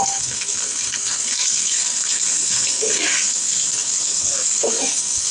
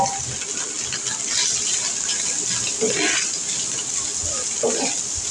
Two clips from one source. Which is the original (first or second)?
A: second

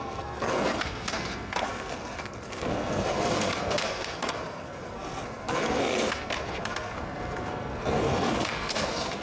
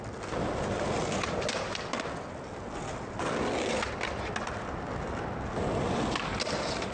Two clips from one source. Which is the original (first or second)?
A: second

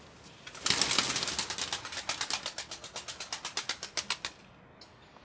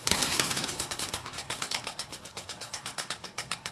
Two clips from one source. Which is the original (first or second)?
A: first